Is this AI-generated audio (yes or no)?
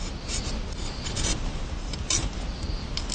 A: no